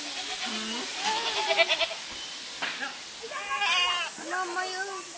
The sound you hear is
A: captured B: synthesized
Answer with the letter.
A